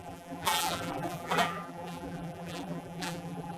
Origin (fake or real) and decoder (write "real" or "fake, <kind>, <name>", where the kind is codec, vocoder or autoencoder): fake, vocoder, BigVGAN v2